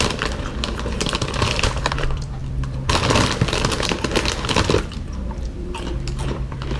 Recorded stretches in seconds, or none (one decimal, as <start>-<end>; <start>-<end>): none